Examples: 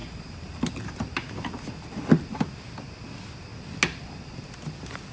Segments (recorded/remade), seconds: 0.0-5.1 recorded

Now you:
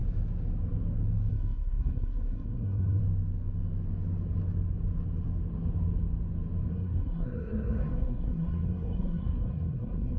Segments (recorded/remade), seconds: 0.0-1.3 recorded; 1.3-3.0 remade; 3.0-6.7 recorded; 6.7-10.2 remade

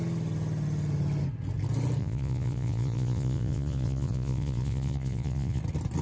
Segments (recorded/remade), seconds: 0.0-2.0 recorded; 2.0-5.6 remade; 5.6-6.0 recorded